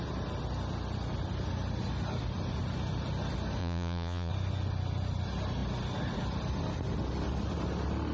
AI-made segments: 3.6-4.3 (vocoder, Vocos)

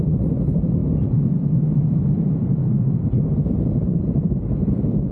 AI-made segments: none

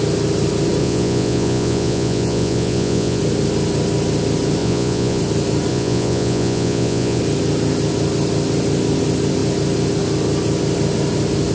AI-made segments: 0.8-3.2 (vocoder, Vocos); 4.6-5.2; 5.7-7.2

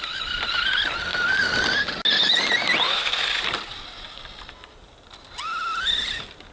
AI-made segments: none

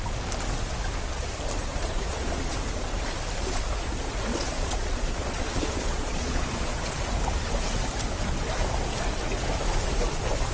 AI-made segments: 1.6-2.5 (vocoder, Vocos); 4.3-7.1

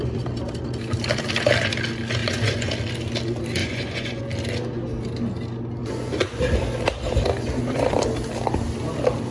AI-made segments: 2.2-2.7 (vocoder, Vocos); 3.6-4.2; 5.8-6.4